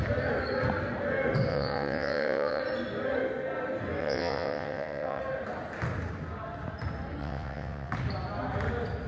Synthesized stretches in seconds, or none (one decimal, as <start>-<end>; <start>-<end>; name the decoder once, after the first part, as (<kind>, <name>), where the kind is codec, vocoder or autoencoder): 1.5-2.6 (vocoder, WaveNeXt); 4.0-5.2; 7.2-7.9